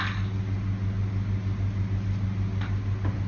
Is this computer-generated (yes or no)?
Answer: no